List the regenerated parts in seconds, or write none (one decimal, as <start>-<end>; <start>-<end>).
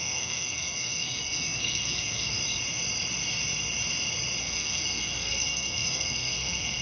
0.0-2.4; 4.4-6.8